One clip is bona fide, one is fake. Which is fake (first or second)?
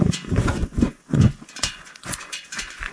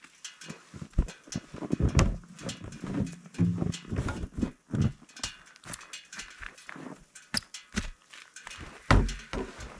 first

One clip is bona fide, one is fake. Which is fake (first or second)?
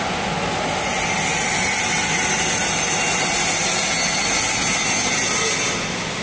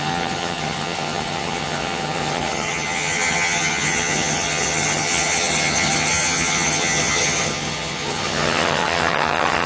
second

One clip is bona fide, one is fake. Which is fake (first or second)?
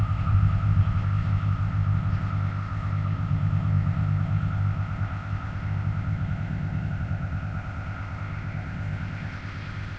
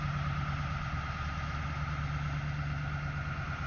first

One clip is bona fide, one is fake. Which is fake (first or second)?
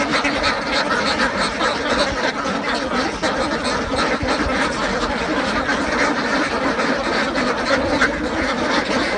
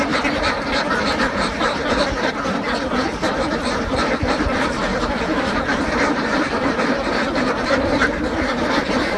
second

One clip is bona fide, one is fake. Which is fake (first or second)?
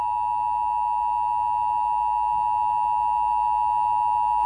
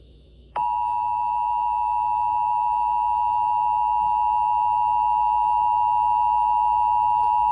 second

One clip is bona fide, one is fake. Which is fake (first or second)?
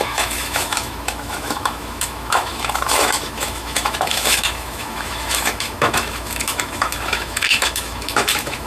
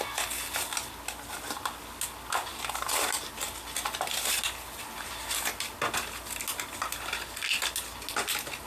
first